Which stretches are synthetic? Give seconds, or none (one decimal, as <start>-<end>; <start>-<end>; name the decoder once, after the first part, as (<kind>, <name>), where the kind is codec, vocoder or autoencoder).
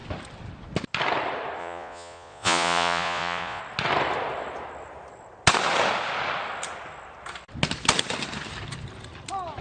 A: 1.6-3.6 (vocoder, Vocos)